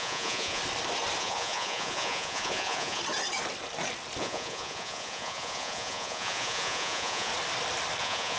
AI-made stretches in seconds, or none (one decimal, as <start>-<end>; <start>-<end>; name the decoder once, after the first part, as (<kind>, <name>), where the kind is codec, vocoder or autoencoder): 0.0-0.6 (vocoder, Vocos); 1.2-3.0; 4.2-7.3; 8.0-8.4